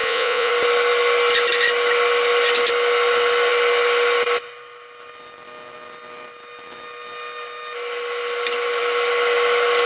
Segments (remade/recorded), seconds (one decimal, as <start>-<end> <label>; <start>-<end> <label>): 0.0-0.5 remade; 0.5-9.9 recorded